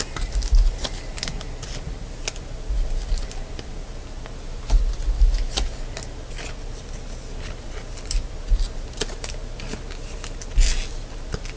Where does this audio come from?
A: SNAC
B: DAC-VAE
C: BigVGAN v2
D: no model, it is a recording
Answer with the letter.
D